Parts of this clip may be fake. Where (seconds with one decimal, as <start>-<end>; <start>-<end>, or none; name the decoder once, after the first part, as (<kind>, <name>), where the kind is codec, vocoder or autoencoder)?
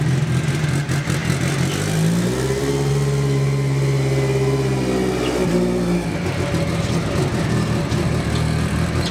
none